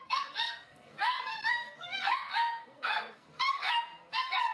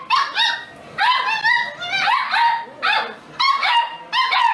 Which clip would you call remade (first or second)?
first